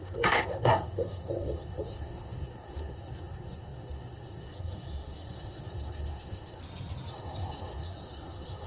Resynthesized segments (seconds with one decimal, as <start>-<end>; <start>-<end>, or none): 0.0-6.6; 7.1-8.7